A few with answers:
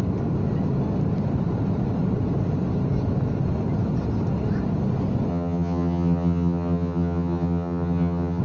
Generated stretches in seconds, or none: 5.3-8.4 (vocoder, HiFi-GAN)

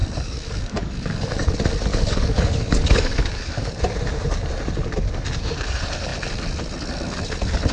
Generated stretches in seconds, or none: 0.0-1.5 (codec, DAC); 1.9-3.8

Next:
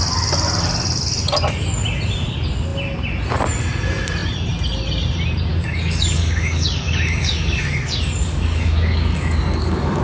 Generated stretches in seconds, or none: 5.5-10.0 (codec, DAC)